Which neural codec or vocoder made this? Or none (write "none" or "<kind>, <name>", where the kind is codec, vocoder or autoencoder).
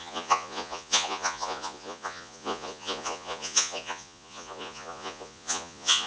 vocoder, Vocos